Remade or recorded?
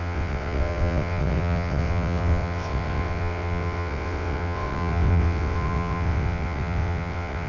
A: remade